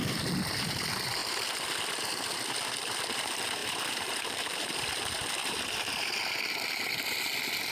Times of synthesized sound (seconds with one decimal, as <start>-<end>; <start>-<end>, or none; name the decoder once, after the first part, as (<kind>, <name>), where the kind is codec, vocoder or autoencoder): 3.6-4.8 (vocoder, BigVGAN v2); 5.4-6.1